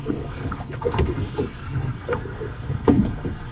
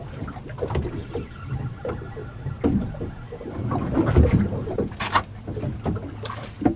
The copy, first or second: first